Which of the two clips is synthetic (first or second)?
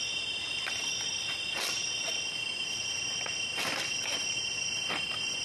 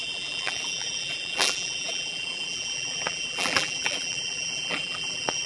second